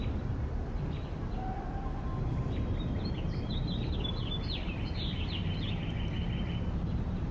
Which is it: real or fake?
fake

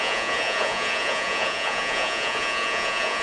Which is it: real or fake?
fake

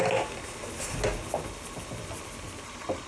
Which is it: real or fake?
real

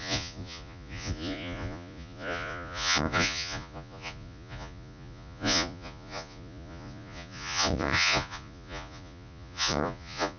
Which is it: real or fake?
fake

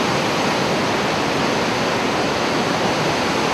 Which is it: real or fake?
real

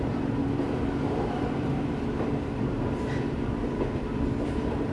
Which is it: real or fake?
fake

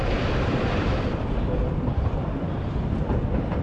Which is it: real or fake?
fake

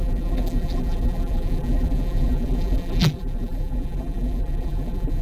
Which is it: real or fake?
fake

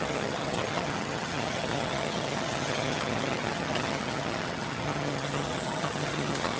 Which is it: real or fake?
fake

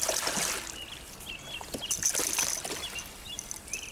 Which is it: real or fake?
real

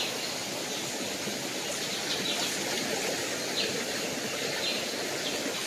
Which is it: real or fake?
real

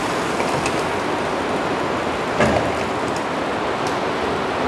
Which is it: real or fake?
real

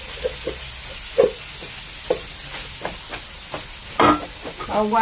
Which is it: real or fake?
real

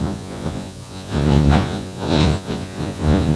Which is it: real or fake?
fake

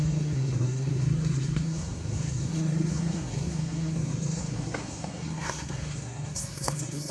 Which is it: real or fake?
fake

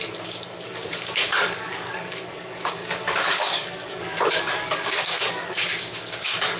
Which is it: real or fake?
fake